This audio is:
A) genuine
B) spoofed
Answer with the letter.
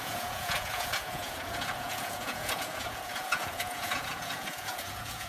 B